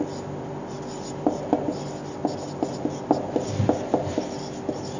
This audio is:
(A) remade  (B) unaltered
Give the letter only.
B